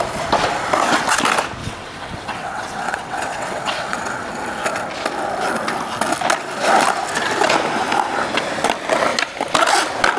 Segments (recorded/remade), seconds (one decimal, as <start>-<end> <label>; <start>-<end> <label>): 0.0-1.6 recorded; 1.6-4.3 remade; 4.3-10.2 recorded